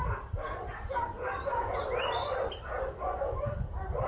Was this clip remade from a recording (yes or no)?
no